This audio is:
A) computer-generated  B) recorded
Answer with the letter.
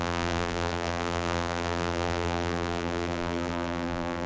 A